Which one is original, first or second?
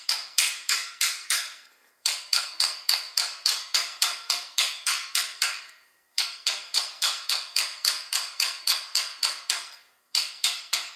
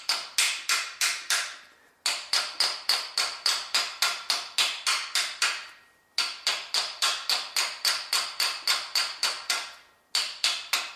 second